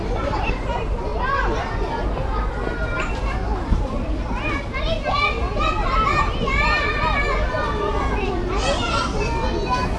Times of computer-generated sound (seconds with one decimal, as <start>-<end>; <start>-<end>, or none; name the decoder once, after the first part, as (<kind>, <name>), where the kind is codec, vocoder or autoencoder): none